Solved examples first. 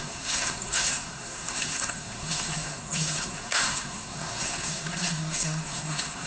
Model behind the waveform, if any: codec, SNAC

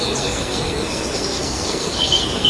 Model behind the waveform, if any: codec, SNAC